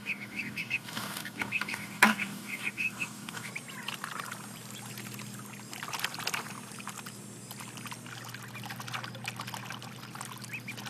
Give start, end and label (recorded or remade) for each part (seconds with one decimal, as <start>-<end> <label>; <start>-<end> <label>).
0.0-3.5 remade; 3.5-10.9 recorded